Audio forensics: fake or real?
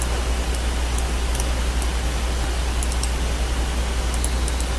real